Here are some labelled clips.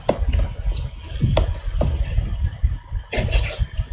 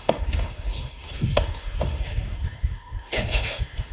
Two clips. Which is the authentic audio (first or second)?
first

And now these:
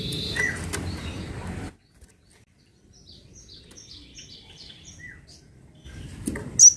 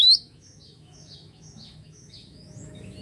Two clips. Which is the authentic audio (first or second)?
first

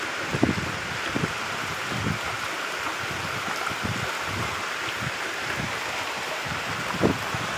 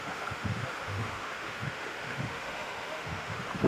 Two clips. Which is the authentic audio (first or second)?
first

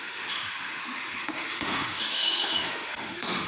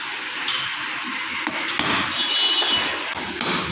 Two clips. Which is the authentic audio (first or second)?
second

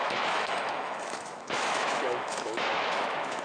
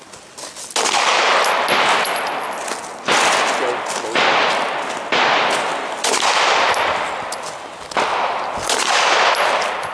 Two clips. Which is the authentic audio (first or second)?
second